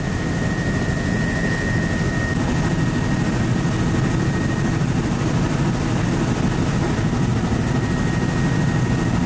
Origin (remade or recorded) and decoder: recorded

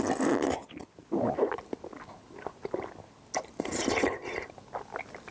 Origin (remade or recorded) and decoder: recorded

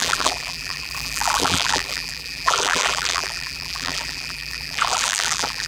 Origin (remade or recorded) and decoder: remade, vocoder, BigVGAN v2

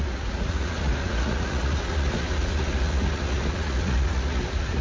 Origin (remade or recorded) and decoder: remade, vocoder, Vocos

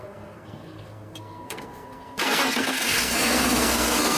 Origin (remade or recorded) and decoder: remade, codec, SNAC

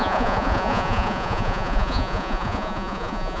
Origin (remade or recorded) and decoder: remade, vocoder, Vocos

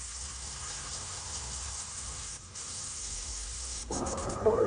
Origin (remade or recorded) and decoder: remade, codec, SNAC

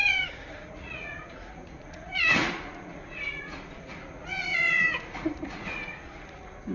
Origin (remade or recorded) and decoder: remade, vocoder, Vocos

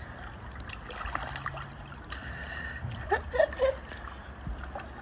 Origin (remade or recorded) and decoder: recorded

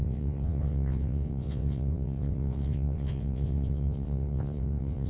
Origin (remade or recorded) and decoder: remade, vocoder, WaveNeXt